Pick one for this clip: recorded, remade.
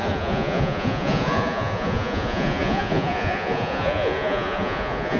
remade